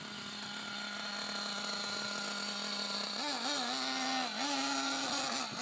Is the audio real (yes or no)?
yes